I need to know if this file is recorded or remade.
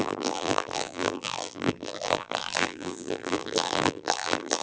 remade